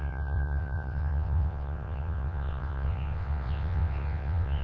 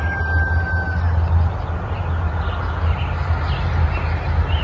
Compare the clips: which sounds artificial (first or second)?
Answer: first